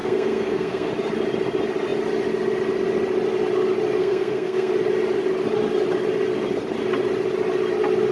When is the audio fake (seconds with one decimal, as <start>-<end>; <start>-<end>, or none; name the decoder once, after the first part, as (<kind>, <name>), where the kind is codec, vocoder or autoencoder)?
0.0-0.9 (codec, SNAC); 4.0-4.7